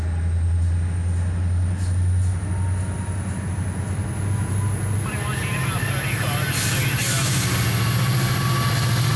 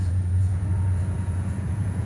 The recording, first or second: first